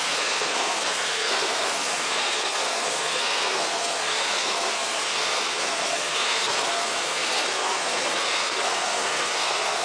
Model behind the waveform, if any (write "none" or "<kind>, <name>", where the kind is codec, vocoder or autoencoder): codec, SNAC